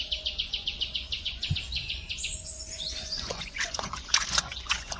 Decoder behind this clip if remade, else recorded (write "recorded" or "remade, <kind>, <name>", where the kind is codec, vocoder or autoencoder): remade, vocoder, Vocos